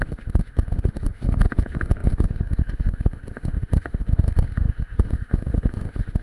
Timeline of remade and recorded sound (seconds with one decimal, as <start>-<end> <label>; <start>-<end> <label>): 0.0-6.2 remade